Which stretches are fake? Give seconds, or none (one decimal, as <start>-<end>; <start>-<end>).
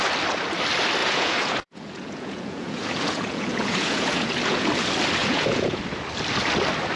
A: 1.0-4.7; 5.2-5.8